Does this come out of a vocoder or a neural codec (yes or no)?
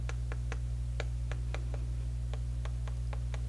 no